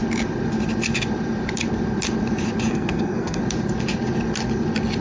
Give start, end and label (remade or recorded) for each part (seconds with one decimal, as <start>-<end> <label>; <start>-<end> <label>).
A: 0.0-2.7 recorded; 2.7-3.4 remade; 3.4-5.0 recorded